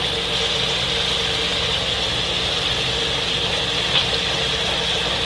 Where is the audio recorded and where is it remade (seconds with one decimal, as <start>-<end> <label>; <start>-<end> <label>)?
0.0-5.2 recorded